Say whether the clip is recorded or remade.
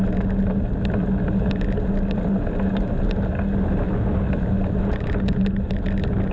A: recorded